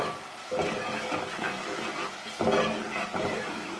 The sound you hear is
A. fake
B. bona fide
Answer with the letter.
B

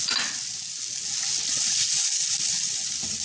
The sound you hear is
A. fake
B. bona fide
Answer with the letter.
B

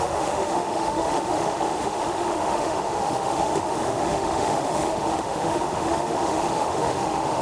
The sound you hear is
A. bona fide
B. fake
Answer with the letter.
B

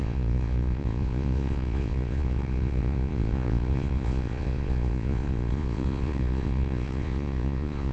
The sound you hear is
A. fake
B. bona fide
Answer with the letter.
A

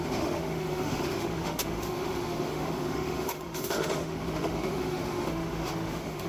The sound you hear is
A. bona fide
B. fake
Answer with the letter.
B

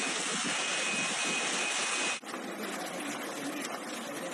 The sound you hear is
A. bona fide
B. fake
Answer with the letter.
A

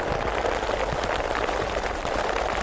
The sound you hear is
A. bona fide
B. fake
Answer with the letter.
A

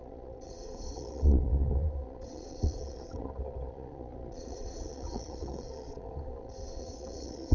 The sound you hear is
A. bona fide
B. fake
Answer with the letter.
B